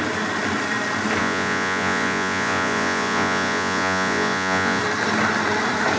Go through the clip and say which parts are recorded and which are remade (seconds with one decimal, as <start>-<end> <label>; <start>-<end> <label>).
0.0-1.2 recorded; 1.2-4.8 remade; 4.8-6.0 recorded